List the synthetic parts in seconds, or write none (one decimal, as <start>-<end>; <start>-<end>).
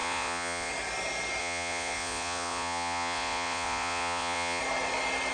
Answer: 0.0-0.7; 1.4-4.6